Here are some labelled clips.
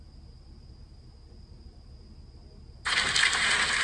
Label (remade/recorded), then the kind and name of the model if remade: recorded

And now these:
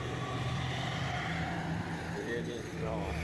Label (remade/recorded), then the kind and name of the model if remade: remade, vocoder, BigVGAN v2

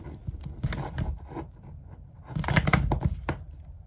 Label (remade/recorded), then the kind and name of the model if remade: remade, vocoder, BigVGAN v2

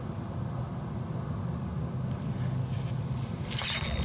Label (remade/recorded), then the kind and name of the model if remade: recorded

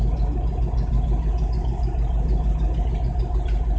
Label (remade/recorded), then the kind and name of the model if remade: recorded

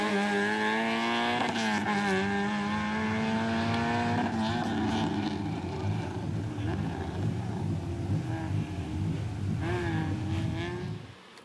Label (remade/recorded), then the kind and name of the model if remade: recorded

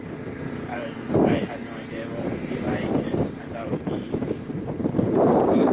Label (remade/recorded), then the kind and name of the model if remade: remade, vocoder, BigVGAN v2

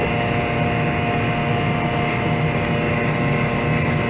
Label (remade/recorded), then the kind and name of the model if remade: recorded